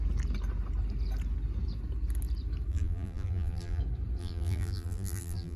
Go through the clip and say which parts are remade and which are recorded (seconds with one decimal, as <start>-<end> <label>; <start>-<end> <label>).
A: 0.0-2.7 recorded; 2.7-3.8 remade; 3.8-4.2 recorded; 4.2-5.6 remade